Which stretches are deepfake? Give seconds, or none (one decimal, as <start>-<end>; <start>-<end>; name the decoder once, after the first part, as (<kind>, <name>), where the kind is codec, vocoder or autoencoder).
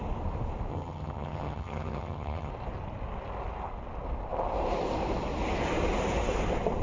0.7-2.5 (vocoder, HiFi-GAN)